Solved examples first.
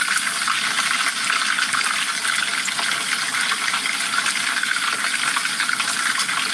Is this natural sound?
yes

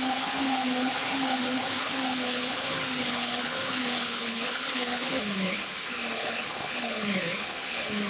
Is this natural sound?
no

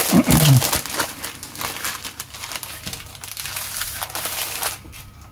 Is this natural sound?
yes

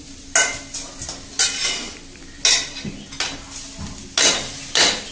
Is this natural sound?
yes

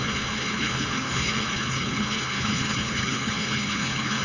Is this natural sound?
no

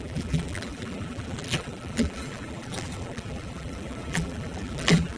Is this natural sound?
no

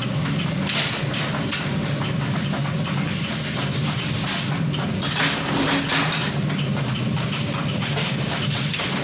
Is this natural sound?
yes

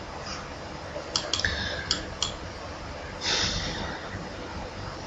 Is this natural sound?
yes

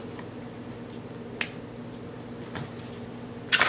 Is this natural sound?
yes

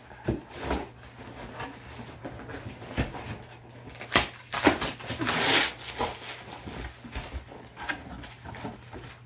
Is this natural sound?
yes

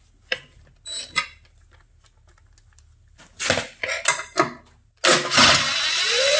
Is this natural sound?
yes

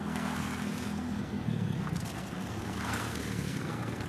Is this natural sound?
no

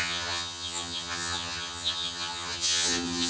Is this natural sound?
no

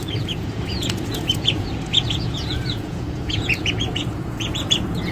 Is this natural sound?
no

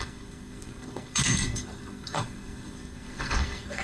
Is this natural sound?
no